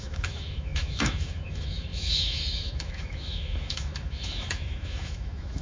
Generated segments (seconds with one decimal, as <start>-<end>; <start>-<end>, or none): 0.0-5.6